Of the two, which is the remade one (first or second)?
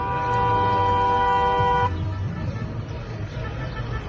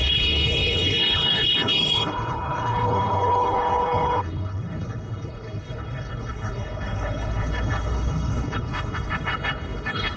second